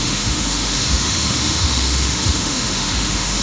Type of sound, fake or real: fake